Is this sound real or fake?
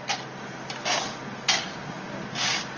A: real